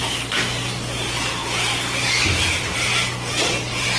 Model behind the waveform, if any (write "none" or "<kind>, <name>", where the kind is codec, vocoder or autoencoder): none